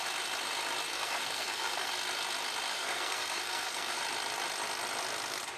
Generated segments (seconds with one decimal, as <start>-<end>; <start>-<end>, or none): 0.9-1.9; 2.7-4.0